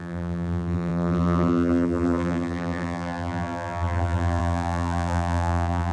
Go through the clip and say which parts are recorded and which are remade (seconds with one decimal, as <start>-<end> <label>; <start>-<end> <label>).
0.0-5.9 remade